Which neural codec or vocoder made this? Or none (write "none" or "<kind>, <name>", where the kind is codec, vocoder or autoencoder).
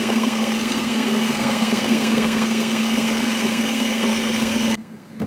codec, SNAC